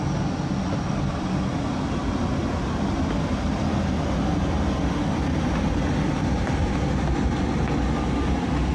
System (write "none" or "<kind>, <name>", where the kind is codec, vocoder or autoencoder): none